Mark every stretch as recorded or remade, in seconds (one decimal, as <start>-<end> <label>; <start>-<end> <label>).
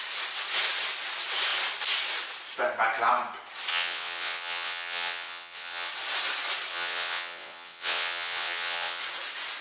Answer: 0.0-3.7 recorded; 3.7-5.9 remade; 5.9-6.7 recorded; 6.7-9.0 remade; 9.0-9.6 recorded